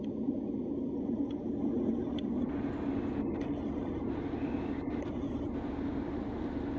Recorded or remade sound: recorded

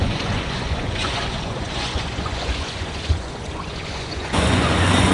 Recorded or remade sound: remade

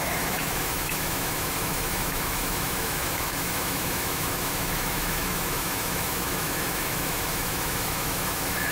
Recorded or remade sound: remade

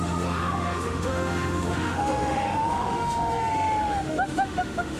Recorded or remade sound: remade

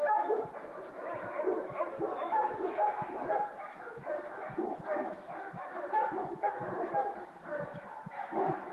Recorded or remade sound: remade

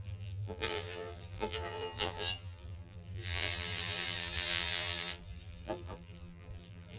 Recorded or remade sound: remade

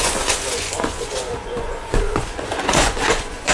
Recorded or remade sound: remade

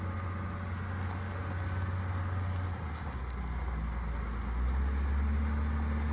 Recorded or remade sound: recorded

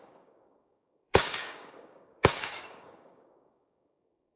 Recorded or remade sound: remade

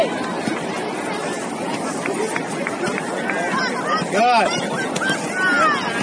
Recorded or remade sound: recorded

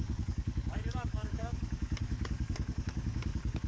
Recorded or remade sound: remade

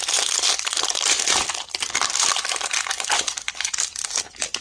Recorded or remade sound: recorded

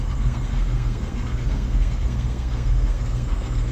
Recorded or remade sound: remade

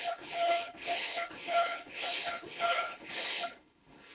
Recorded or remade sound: remade